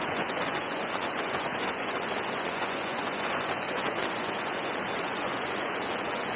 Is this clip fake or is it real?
fake